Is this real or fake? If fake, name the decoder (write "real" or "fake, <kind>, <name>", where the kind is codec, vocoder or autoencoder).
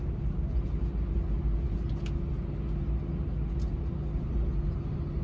real